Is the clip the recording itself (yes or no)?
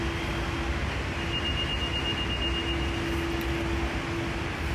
yes